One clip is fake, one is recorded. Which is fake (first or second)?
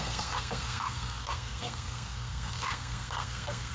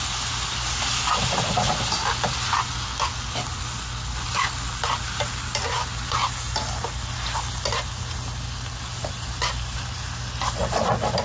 first